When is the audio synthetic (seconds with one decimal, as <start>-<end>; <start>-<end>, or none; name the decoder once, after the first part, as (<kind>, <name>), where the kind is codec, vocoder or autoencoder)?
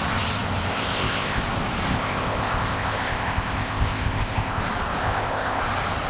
0.7-1.4 (codec, ZipCodec); 1.9-4.6; 5.0-5.6